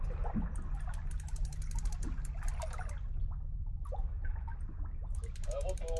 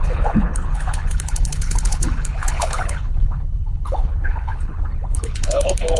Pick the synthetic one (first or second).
second